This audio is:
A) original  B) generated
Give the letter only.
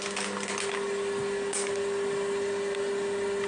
A